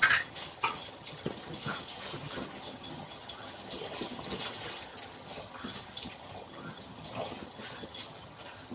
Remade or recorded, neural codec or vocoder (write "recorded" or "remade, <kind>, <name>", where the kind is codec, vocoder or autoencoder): remade, vocoder, HiFi-GAN